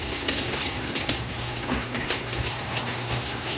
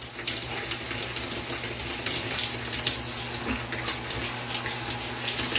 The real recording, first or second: second